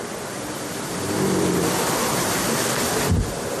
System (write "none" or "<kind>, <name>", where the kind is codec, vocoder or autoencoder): none